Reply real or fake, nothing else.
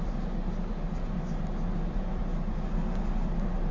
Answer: real